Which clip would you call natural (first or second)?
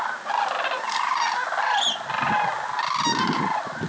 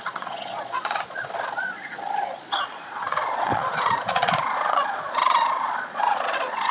first